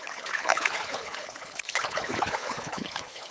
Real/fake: fake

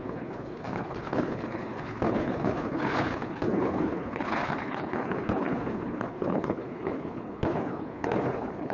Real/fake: fake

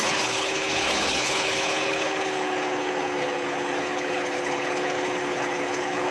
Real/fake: fake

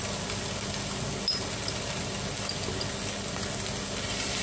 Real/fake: real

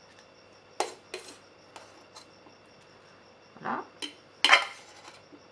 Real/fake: real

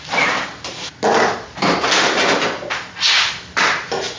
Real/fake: real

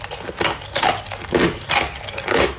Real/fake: real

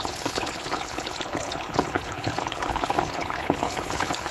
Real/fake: fake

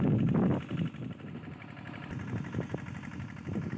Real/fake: real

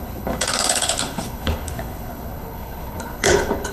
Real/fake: fake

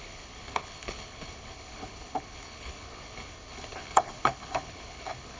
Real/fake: fake